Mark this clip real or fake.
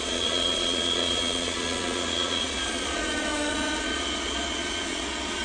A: fake